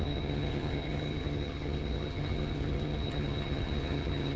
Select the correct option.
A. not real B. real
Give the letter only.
A